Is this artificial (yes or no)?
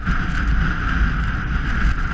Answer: no